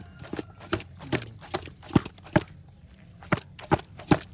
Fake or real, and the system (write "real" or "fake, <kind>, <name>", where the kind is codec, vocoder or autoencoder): real